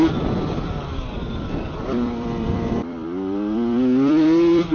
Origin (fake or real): fake